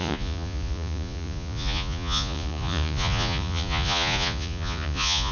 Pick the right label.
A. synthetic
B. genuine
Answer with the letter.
A